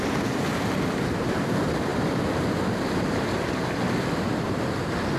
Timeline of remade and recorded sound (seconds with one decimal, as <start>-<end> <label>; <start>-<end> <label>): 0.0-5.2 recorded